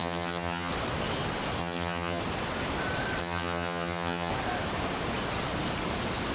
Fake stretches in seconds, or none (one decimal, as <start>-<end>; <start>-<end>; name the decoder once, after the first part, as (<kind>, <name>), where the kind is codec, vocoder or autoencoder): 0.0-0.7 (vocoder, HiFi-GAN); 1.6-2.2; 3.2-4.3